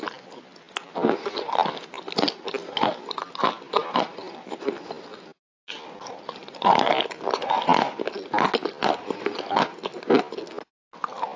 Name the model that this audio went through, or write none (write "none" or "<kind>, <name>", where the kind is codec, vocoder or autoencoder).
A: none